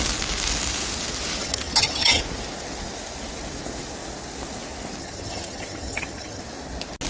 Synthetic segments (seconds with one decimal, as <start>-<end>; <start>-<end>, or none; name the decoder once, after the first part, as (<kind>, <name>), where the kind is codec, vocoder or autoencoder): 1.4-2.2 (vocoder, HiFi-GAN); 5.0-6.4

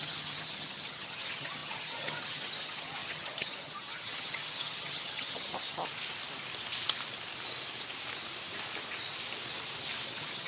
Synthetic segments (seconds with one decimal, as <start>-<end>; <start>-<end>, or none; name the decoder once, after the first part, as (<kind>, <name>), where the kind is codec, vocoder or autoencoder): 0.0-5.8 (vocoder, HiFi-GAN); 10.1-10.5

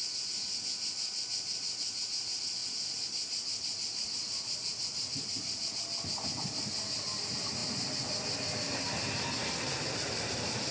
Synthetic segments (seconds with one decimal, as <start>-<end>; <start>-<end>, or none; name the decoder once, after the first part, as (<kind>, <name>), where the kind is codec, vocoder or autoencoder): none

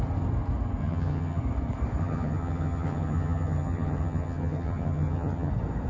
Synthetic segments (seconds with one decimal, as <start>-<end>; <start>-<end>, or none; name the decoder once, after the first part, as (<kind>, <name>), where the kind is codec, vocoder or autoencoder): 0.8-1.4 (vocoder, HiFi-GAN); 2.0-5.5

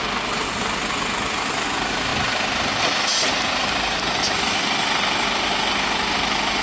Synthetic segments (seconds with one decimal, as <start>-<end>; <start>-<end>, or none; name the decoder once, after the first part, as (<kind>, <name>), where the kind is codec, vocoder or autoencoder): none

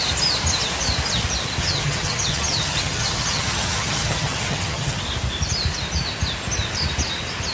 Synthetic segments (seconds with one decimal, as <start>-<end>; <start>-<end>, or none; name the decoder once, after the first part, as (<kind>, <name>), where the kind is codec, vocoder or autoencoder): 1.6-5.0 (vocoder, HiFi-GAN)

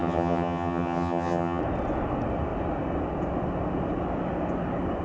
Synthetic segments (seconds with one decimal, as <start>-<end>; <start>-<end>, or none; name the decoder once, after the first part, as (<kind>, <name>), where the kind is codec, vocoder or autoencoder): 0.0-1.6 (vocoder, HiFi-GAN)

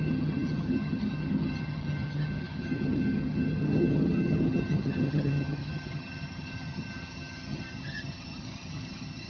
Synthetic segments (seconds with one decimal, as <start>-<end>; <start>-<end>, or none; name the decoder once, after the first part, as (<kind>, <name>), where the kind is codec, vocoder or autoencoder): 0.0-9.3 (vocoder, HiFi-GAN)